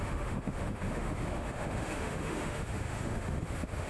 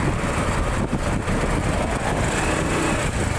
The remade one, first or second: first